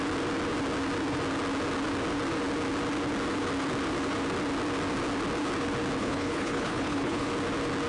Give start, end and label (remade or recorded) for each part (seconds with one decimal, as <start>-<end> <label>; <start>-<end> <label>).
0.0-6.0 recorded; 6.0-7.3 remade; 7.3-7.9 recorded